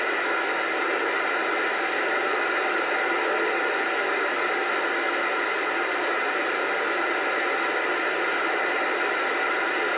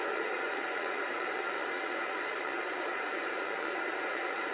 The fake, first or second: second